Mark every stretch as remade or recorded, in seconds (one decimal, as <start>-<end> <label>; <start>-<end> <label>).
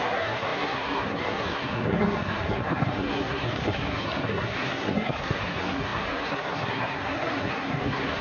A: 0.0-8.2 remade